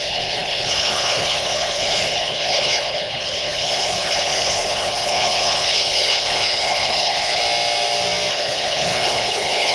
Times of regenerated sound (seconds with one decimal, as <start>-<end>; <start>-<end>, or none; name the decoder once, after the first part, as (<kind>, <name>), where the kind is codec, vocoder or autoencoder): 0.0-7.4 (codec, HILCodec); 8.3-9.7